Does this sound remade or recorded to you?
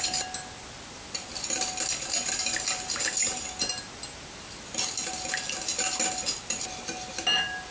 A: recorded